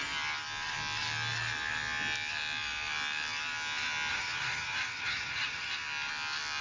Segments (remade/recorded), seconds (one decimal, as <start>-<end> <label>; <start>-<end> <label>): 0.0-4.1 recorded; 4.1-5.7 remade; 5.7-6.6 recorded